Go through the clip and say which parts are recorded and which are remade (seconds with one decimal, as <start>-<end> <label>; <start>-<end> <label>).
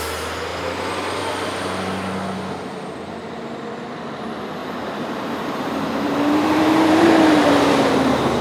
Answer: 0.0-4.6 recorded; 4.6-7.1 remade; 7.1-8.4 recorded